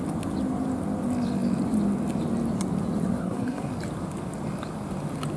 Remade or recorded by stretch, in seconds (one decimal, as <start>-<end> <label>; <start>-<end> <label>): 0.0-3.2 recorded; 3.2-3.7 remade; 3.7-5.4 recorded